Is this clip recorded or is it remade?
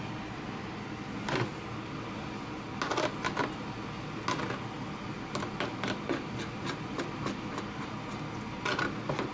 recorded